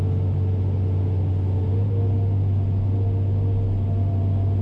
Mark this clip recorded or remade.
recorded